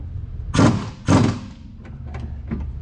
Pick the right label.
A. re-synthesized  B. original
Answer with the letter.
B